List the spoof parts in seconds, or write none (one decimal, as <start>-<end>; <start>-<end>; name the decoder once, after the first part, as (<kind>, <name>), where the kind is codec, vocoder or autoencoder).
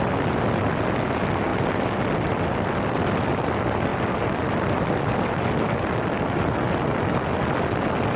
none